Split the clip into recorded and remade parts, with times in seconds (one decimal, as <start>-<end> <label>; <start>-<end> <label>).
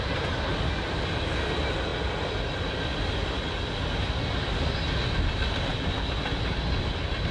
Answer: 0.0-7.3 recorded